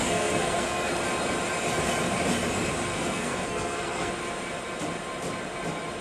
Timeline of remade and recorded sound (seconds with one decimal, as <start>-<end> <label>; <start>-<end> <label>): 0.0-0.9 remade; 0.9-2.9 recorded; 2.9-4.1 remade; 4.1-6.0 recorded